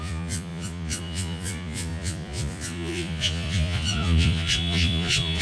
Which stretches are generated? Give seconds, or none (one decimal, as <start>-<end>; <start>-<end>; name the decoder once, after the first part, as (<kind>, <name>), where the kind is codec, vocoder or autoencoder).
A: 0.0-5.4 (vocoder, Vocos)